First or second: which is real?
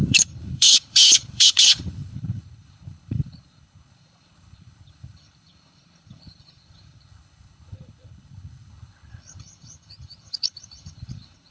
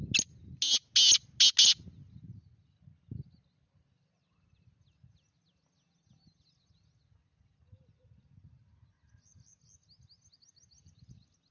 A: second